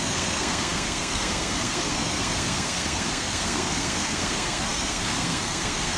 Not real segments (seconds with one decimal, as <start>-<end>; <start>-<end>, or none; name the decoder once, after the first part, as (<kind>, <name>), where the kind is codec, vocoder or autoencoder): 0.0-6.0 (codec, SNAC)